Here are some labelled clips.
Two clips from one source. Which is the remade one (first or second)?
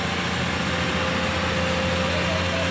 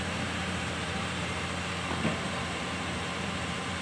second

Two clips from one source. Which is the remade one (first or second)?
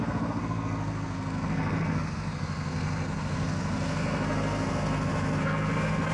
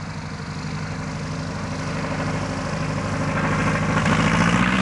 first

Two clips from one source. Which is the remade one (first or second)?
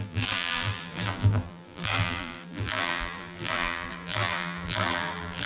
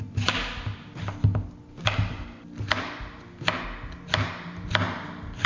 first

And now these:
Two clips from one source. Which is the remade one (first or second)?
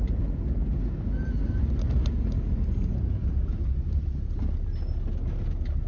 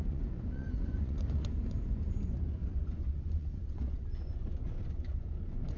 second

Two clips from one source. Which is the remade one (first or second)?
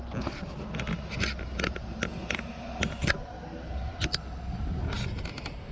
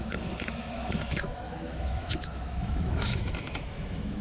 second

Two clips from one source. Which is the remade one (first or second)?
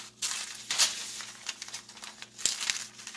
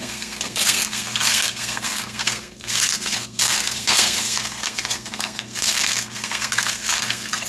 second